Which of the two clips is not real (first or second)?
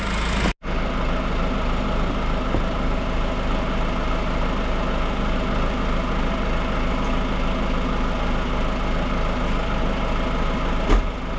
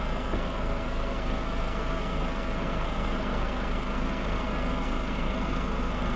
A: second